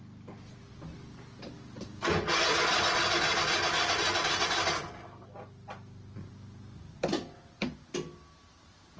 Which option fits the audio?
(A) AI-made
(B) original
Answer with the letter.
B